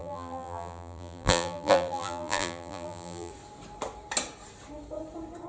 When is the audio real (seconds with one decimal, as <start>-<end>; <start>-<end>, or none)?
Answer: 3.3-5.5